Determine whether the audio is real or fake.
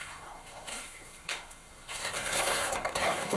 fake